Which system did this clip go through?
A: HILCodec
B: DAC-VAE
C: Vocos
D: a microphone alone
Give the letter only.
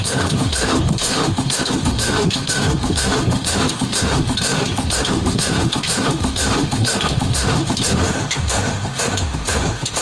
B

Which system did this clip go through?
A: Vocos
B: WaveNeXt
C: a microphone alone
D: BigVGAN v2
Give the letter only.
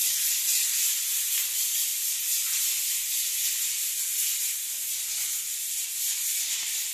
C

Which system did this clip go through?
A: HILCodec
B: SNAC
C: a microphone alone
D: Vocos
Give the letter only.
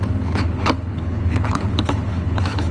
A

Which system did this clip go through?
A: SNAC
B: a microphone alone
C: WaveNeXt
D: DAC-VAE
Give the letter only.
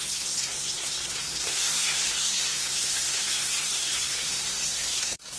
A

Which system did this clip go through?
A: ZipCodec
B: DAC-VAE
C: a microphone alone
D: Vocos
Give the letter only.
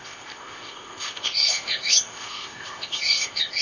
A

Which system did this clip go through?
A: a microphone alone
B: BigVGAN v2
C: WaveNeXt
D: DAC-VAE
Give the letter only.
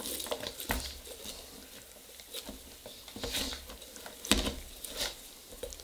A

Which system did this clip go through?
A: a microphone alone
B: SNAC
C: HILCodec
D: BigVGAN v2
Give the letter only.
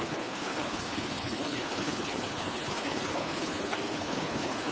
C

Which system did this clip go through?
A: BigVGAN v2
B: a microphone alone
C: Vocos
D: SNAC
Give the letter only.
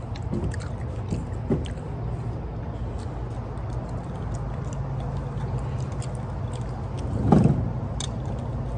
B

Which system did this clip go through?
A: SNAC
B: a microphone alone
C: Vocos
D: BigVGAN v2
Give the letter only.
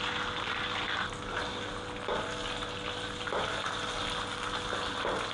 B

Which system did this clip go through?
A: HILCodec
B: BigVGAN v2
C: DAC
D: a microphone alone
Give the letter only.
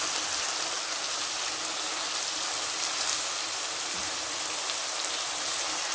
D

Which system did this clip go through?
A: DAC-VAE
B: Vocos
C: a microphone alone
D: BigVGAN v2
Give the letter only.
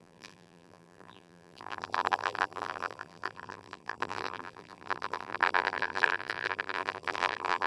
D